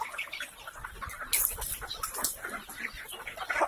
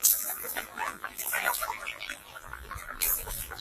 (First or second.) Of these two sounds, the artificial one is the second